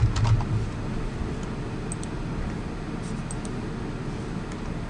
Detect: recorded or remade recorded